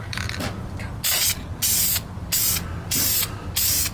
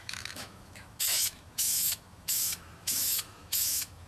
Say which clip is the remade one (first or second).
second